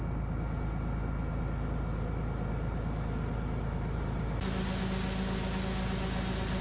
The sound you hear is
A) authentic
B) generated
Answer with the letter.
A